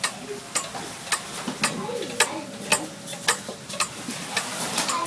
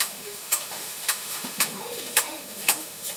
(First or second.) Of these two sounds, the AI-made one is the second